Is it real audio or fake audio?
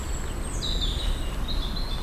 real